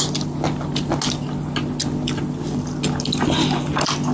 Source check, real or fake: real